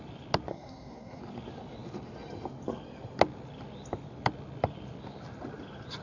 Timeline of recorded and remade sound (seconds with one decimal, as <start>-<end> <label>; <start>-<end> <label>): 0.0-0.5 recorded; 0.5-1.2 remade; 1.2-6.0 recorded